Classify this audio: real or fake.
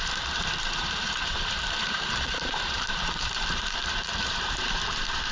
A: fake